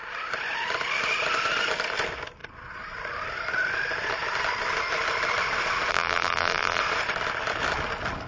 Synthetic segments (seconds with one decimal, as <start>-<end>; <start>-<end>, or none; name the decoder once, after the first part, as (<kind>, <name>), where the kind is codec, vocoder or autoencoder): 5.9-6.8 (vocoder, BigVGAN v2)